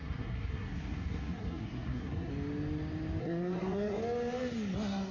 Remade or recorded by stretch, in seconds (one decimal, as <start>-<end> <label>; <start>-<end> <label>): 0.0-2.3 remade; 2.3-3.2 recorded; 3.2-4.0 remade; 4.0-5.1 recorded